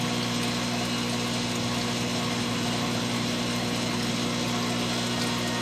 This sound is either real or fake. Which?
real